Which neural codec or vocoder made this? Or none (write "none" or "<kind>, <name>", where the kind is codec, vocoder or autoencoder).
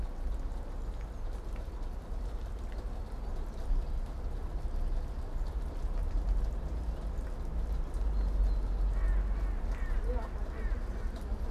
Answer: none